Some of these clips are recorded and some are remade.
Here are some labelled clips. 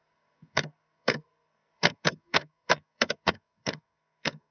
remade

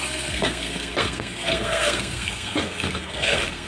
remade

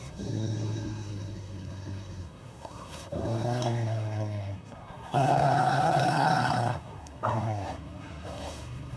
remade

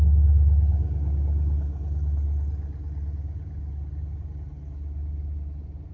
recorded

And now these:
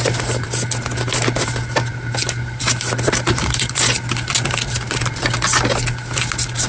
recorded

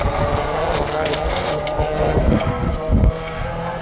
remade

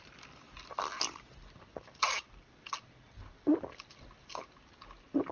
recorded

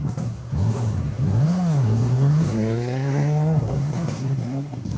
remade